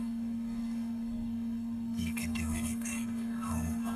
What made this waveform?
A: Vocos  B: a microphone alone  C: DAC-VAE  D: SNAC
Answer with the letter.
D